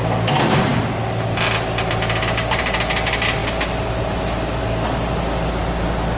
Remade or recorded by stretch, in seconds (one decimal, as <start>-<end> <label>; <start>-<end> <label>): 0.0-6.2 recorded